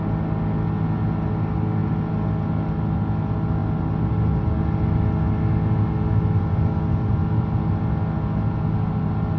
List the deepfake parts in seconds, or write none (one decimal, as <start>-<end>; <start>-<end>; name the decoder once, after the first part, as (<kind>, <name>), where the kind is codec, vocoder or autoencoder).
none